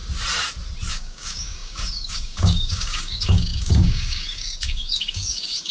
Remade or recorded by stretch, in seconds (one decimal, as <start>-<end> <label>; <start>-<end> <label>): 0.0-0.9 recorded; 0.9-5.7 remade